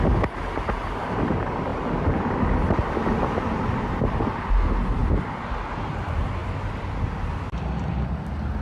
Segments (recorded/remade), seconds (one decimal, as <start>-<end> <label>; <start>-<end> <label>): 0.0-8.6 recorded